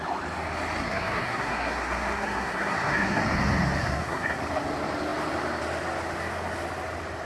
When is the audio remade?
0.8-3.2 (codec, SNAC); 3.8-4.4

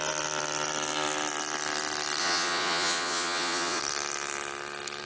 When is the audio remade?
2.2-3.8 (vocoder, Vocos)

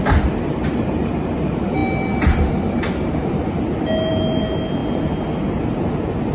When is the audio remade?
none